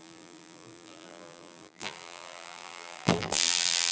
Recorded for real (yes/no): no